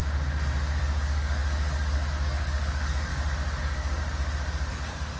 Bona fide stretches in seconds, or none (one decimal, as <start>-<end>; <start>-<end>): 0.0-0.8; 3.1-3.6; 4.0-4.7